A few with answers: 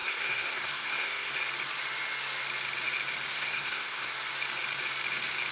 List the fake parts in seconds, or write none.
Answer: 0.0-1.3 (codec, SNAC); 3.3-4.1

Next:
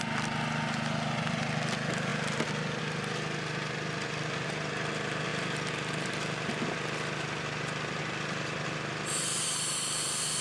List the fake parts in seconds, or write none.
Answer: none

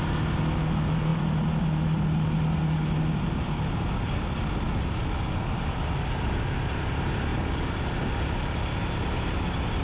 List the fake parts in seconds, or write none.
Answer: none